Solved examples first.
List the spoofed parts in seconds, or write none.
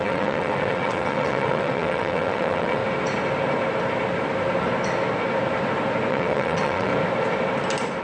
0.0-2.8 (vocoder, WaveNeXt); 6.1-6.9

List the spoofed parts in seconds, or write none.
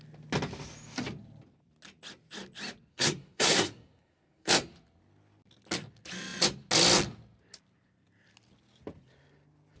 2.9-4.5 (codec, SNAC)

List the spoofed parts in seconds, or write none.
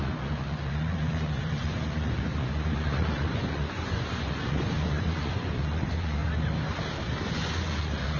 0.0-6.2 (vocoder, Vocos); 7.3-8.2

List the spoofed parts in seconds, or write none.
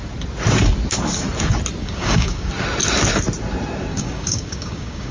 1.8-2.5 (codec, DAC); 3.9-5.1